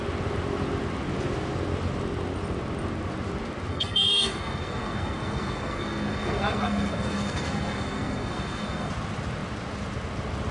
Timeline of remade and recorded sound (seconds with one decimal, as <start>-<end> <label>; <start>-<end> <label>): 0.0-3.7 recorded; 3.7-8.9 remade; 8.9-10.5 recorded